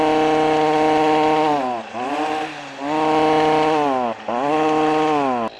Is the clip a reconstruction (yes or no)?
no